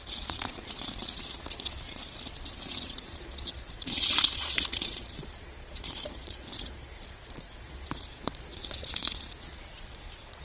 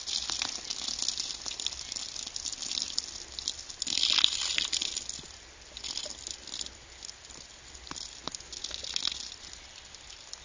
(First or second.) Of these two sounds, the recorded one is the second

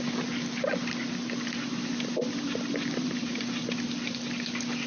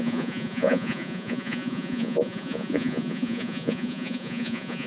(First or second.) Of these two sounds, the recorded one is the first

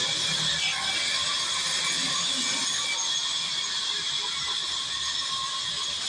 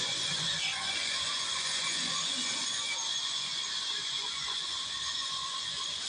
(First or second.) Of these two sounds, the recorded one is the first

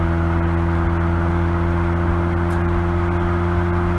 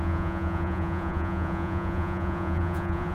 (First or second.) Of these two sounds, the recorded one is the first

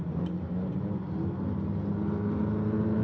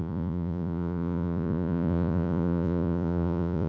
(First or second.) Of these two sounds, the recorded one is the first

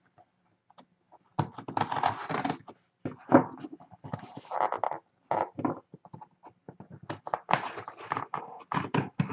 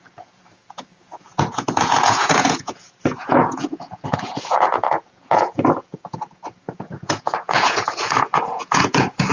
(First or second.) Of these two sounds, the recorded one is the first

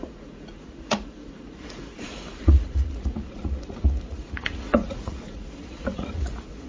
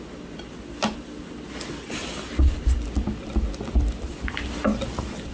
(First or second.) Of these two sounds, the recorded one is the second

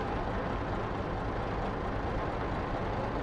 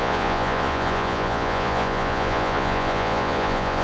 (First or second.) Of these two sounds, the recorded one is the first